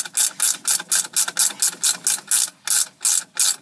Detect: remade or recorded recorded